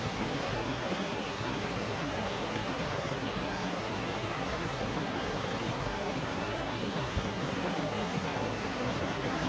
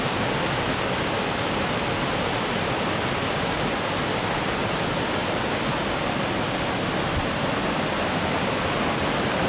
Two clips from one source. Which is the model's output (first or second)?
first